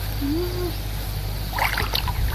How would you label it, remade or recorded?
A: recorded